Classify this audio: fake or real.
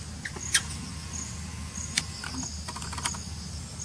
real